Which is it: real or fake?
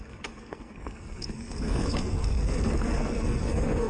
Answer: fake